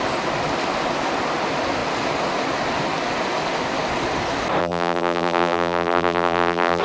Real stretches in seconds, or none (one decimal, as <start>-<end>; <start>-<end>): 0.0-4.6